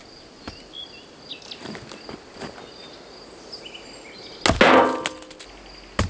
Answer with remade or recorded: recorded